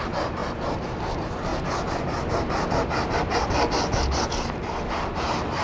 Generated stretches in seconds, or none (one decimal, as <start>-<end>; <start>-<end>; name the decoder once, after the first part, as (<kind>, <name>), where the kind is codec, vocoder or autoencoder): 0.0-0.4 (vocoder, BigVGAN v2); 1.0-1.5; 4.9-5.6